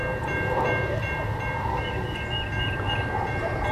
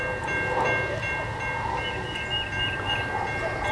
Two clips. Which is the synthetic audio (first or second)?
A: first